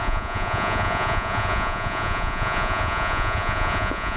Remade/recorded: remade